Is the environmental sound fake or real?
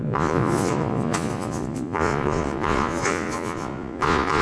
fake